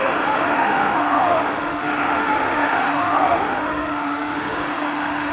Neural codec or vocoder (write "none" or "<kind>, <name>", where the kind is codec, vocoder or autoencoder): autoencoder, DAC-VAE